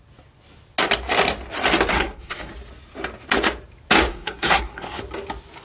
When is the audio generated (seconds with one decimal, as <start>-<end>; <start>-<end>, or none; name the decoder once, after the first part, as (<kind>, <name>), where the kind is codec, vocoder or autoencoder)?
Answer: 1.9-2.5 (codec, SNAC); 4.1-5.0